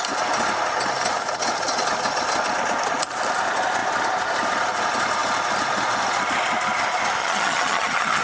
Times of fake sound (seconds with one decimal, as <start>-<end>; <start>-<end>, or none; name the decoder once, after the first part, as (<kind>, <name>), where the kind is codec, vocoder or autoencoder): 7.2-8.2 (vocoder, HiFi-GAN)